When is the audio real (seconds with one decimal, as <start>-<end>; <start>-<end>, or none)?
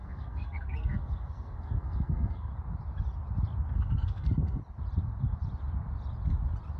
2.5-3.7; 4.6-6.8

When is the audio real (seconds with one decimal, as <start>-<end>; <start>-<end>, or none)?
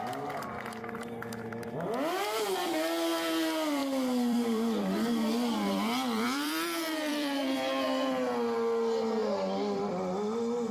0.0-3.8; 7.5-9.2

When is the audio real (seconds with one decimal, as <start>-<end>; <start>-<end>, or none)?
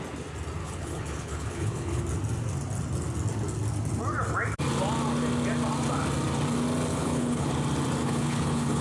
0.0-0.6; 2.0-6.9; 7.5-8.0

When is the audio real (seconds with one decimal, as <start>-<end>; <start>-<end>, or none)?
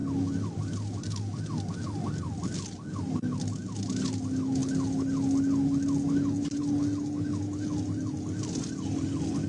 0.0-9.5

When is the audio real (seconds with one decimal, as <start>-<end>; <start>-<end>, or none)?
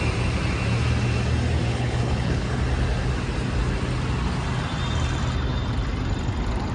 0.0-1.7; 2.6-6.7